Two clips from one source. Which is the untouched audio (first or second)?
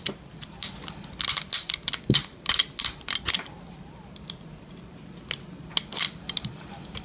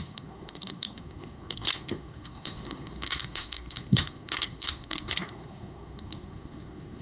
first